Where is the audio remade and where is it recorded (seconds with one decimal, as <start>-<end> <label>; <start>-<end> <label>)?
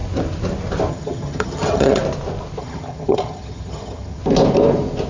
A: 0.0-0.9 recorded; 0.9-2.0 remade; 2.0-2.6 recorded; 2.6-4.2 remade; 4.2-5.1 recorded